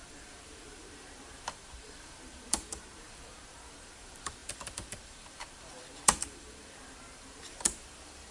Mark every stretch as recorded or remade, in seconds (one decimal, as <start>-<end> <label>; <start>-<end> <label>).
0.0-8.3 remade